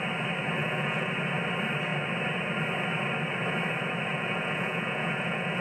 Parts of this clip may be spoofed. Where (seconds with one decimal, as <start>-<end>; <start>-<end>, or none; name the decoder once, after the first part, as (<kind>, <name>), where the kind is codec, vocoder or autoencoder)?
0.6-1.1 (vocoder, Vocos); 4.1-5.6